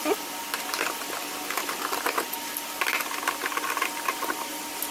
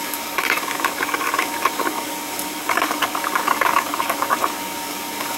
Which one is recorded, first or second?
first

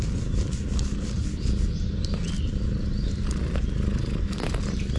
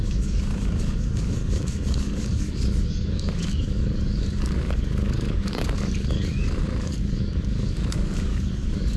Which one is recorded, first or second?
first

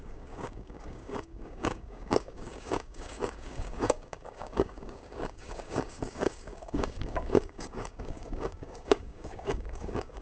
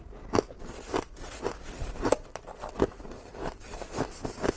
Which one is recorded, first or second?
second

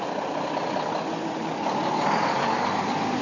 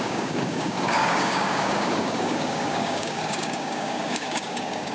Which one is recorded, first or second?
first